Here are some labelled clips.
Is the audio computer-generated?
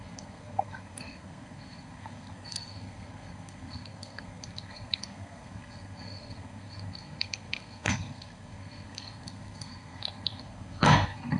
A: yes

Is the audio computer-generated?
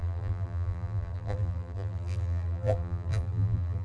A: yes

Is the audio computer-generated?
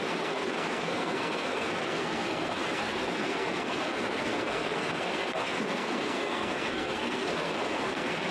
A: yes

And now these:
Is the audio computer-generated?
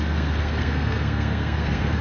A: yes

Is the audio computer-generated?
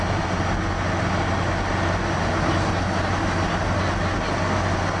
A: no